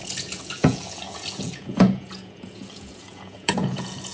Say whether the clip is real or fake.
fake